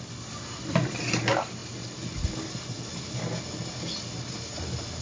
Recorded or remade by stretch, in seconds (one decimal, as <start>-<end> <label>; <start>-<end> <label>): 0.0-1.6 remade; 1.6-4.6 recorded; 4.6-5.0 remade